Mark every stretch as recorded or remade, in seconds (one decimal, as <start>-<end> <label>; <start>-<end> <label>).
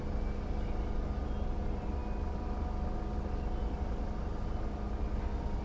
0.0-5.6 recorded